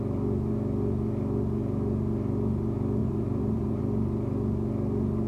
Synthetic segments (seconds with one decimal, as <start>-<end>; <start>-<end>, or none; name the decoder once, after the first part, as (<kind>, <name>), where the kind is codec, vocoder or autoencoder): 3.0-3.8 (vocoder, BigVGAN v2)